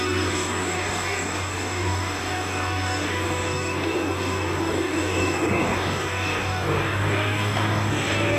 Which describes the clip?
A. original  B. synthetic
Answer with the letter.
B